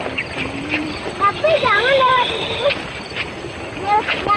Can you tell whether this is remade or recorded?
recorded